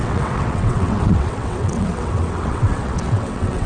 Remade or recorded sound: remade